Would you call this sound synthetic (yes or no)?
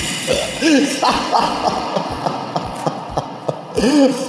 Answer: yes